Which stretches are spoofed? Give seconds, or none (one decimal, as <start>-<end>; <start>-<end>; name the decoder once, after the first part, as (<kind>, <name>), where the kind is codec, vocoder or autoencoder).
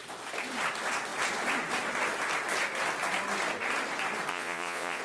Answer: 4.3-5.0 (vocoder, Vocos)